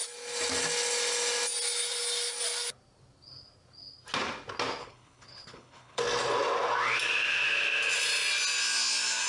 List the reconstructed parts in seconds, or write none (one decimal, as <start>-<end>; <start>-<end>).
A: 4.8-6.0